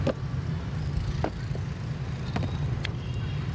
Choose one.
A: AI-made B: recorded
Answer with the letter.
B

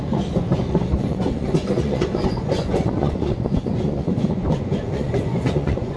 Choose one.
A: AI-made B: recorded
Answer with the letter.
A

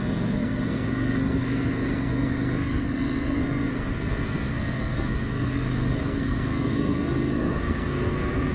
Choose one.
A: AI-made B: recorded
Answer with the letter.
A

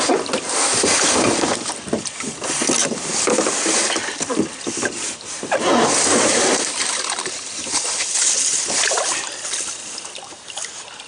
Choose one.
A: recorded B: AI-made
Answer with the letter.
A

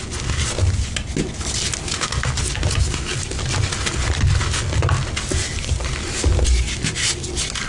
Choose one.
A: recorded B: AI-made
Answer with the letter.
A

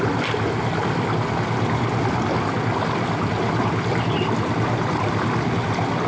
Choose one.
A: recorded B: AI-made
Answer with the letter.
A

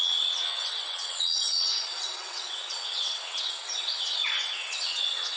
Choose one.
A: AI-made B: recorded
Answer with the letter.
A